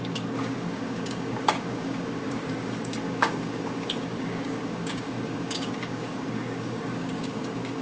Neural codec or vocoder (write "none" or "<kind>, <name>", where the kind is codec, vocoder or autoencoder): codec, DAC